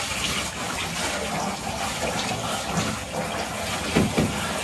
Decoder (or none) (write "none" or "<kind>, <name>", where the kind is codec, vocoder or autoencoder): none